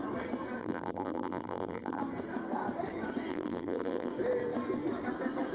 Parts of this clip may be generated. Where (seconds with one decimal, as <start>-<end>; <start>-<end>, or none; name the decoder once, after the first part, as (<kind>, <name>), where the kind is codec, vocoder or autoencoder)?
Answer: 0.6-2.0 (vocoder, BigVGAN v2); 3.3-4.1